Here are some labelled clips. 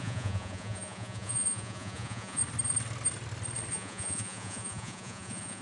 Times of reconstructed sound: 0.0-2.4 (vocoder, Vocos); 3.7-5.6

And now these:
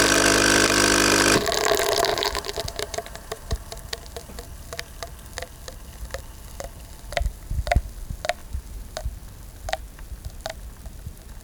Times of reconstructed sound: 2.1-4.3 (vocoder, BigVGAN v2); 8.4-9.0

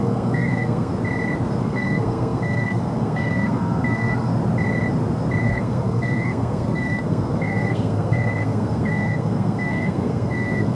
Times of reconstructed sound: 0.0-0.9 (codec, SNAC); 1.6-4.3; 5.4-10.7